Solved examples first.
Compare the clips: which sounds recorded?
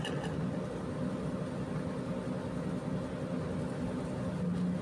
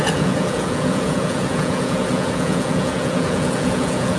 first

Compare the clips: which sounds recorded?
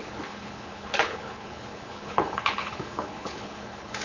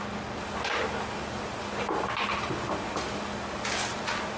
second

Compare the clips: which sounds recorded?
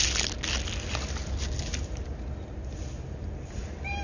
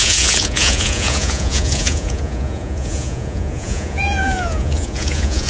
first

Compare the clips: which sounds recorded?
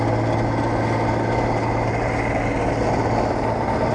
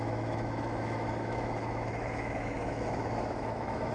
first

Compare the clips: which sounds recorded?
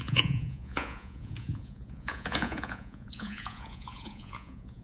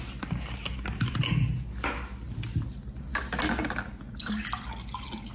second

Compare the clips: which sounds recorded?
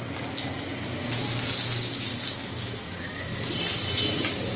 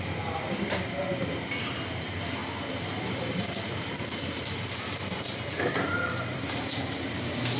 first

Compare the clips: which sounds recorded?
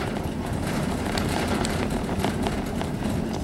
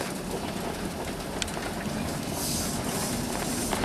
second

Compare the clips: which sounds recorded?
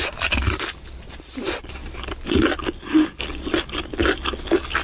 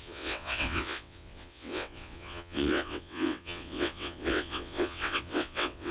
first